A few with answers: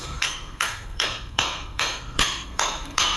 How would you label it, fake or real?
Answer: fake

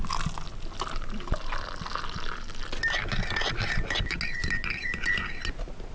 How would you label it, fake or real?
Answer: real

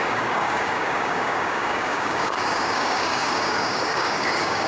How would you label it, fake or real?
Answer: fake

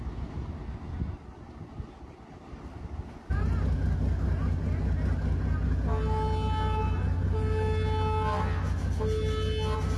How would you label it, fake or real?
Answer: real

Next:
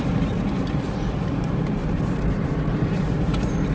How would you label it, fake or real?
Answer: real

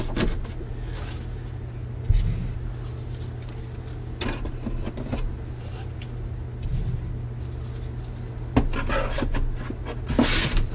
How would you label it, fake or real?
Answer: real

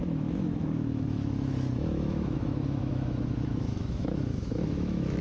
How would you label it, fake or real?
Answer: fake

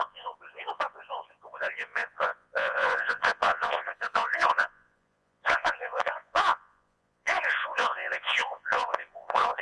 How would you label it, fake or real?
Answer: fake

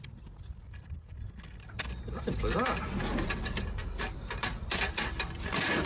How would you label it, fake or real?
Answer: fake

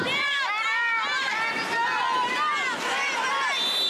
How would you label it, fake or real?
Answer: real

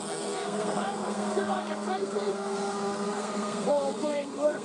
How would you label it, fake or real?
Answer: fake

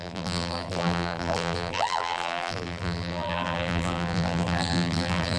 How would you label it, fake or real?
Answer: fake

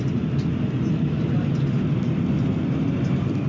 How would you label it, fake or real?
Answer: real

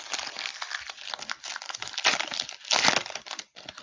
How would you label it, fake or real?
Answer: real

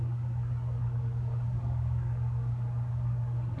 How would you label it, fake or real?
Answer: fake